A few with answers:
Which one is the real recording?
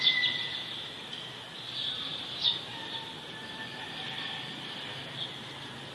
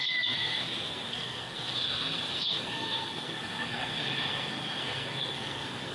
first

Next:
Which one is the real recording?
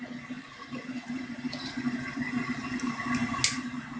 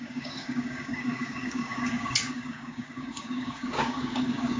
first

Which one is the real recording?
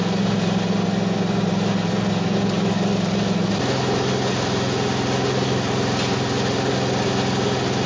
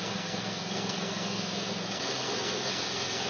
first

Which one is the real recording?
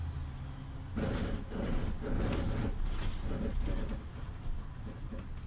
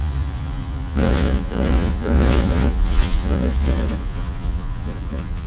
first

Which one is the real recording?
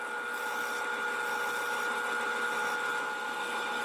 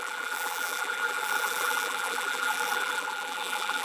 first